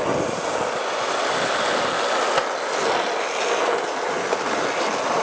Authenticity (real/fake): real